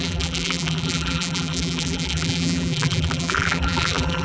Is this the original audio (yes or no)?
no